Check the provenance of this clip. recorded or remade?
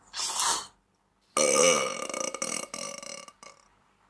recorded